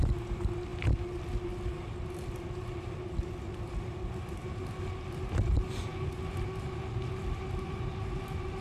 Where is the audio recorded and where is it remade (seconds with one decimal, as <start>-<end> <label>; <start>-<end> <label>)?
0.0-8.6 recorded